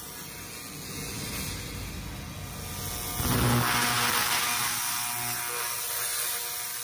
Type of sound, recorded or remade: recorded